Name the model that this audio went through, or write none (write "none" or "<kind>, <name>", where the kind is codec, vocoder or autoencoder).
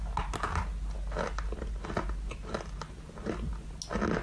none